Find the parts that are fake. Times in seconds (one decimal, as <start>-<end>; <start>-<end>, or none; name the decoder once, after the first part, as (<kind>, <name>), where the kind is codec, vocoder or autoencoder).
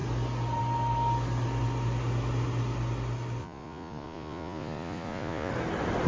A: 3.4-5.5 (vocoder, Vocos)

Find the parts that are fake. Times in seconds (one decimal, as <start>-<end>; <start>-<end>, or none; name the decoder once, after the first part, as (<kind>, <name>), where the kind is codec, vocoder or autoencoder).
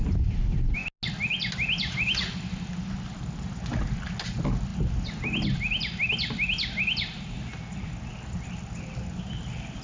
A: none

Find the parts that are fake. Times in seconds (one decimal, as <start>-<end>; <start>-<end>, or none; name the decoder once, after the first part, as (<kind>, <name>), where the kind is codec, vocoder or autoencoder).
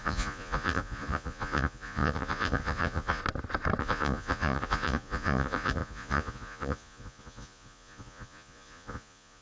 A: 0.0-3.2 (vocoder, Vocos); 3.8-9.4